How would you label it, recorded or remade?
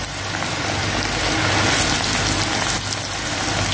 recorded